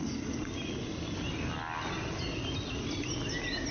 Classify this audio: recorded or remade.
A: recorded